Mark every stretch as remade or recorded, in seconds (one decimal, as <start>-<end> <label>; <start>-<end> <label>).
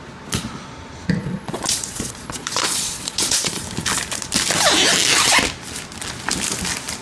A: 0.0-1.2 recorded; 1.2-3.6 remade; 3.6-7.0 recorded